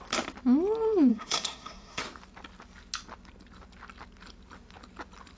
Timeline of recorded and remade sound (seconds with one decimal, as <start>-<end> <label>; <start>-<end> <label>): 0.0-1.1 recorded; 1.1-2.0 remade; 2.0-5.4 recorded